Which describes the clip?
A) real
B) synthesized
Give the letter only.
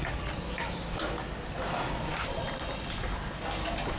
A